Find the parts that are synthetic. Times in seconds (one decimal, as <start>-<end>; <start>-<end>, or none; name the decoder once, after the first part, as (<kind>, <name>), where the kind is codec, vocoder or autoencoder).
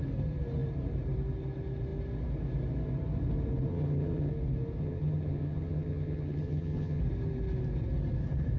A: 3.7-4.3 (vocoder, HiFi-GAN); 4.8-7.0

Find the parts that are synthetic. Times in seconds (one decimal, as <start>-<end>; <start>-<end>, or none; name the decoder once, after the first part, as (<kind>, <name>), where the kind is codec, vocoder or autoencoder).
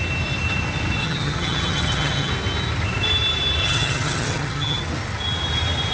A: 1.0-2.3 (vocoder, HiFi-GAN); 3.6-4.8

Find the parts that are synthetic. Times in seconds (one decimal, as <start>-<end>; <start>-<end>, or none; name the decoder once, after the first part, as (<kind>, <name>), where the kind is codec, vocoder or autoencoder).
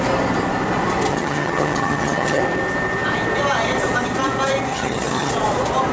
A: 1.1-2.4 (vocoder, HiFi-GAN); 4.7-5.3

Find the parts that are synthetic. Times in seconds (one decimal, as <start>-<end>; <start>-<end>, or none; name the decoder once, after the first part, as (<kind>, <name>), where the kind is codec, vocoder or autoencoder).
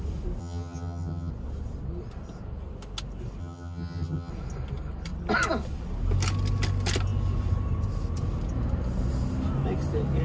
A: 0.4-1.3 (vocoder, HiFi-GAN); 3.4-4.3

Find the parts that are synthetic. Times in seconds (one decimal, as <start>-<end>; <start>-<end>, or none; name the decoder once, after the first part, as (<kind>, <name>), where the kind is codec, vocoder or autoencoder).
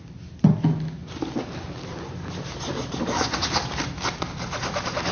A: none